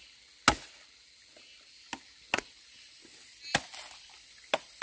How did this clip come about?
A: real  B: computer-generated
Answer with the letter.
A